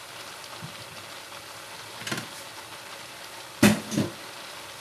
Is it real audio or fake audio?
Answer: real